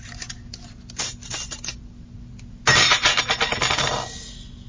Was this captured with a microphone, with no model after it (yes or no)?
yes